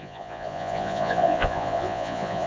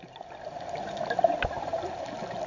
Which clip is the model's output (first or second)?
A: first